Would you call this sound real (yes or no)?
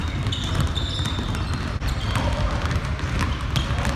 yes